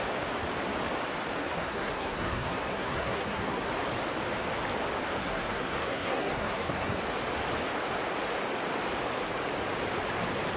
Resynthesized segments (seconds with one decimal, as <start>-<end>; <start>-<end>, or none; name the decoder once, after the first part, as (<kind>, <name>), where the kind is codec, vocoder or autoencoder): 1.4-3.7 (codec, SNAC); 5.2-7.0